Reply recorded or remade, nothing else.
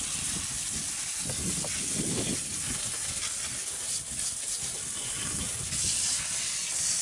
recorded